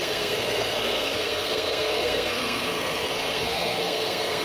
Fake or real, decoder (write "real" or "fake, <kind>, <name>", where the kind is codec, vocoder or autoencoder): fake, codec, SNAC